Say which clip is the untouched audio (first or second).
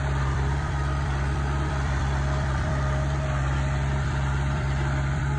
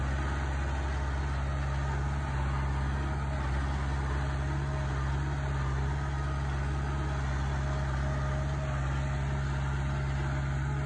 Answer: second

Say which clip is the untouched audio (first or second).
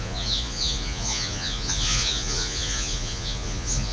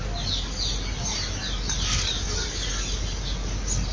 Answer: second